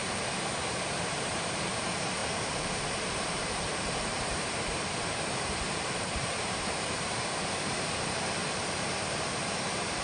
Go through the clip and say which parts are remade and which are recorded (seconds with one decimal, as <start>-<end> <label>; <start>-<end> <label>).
0.0-0.7 recorded; 0.7-8.4 remade; 8.4-9.3 recorded; 9.3-10.0 remade